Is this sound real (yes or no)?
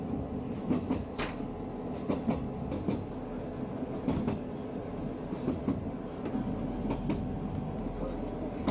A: yes